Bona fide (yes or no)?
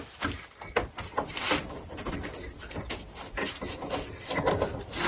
yes